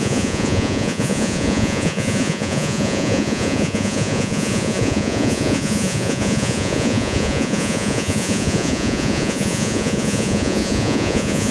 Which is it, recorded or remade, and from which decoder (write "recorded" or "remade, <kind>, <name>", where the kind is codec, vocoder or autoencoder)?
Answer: remade, vocoder, Vocos